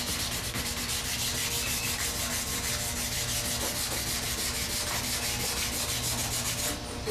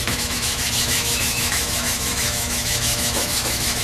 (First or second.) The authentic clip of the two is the first